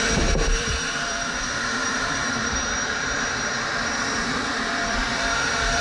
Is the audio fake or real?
fake